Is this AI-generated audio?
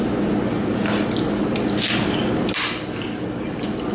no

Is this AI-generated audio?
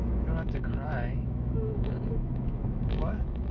yes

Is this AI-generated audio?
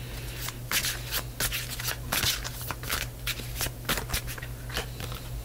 no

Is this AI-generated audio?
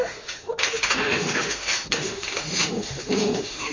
yes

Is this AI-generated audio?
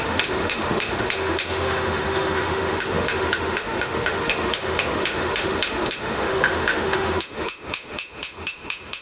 yes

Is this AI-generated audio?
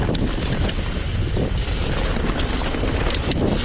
no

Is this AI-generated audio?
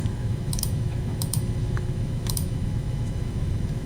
yes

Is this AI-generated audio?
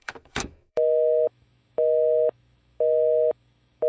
yes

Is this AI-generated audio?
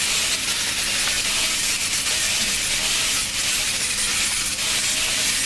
no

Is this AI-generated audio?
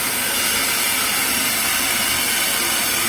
no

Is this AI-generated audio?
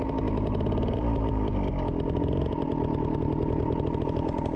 no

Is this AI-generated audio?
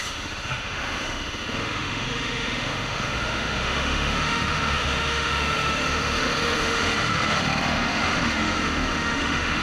yes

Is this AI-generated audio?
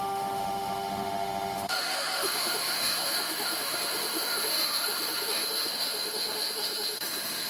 yes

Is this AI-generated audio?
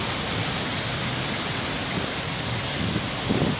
no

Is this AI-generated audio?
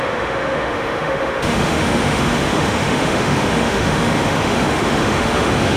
yes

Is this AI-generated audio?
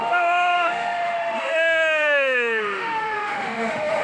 yes